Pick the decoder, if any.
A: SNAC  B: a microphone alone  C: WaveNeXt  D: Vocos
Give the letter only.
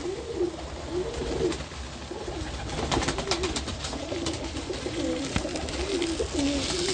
B